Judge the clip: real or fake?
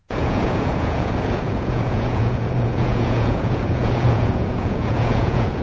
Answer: fake